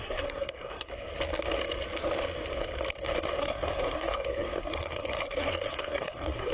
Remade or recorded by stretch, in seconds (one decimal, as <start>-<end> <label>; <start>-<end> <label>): 0.0-0.9 remade; 0.9-3.4 recorded; 3.4-6.5 remade